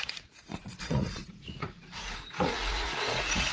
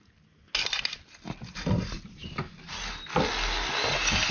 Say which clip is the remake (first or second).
first